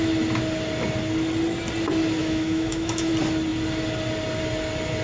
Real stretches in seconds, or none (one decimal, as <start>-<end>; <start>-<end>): 0.0-2.2; 3.1-5.0